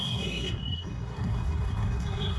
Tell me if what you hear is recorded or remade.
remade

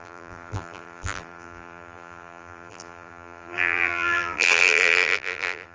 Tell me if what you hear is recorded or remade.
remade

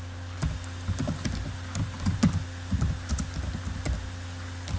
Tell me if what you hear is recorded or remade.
recorded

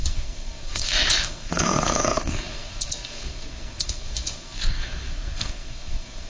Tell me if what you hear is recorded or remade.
remade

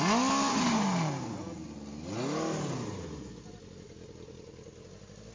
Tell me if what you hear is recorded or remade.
recorded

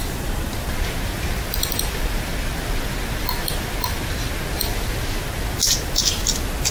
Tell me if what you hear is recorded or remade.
recorded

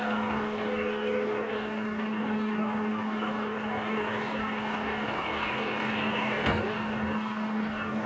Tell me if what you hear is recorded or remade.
remade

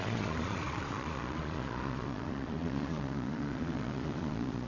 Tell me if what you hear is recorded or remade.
remade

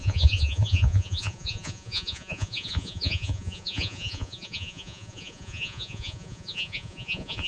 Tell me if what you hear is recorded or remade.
remade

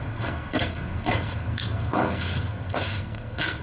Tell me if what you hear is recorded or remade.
remade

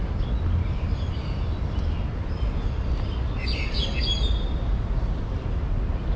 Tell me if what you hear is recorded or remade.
recorded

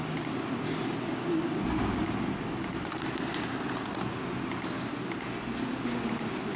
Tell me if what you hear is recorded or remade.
recorded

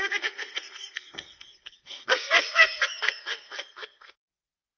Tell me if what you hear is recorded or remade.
remade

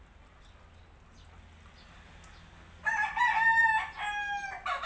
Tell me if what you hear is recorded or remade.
recorded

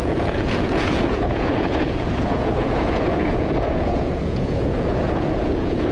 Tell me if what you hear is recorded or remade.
remade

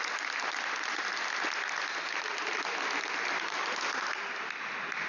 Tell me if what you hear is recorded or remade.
recorded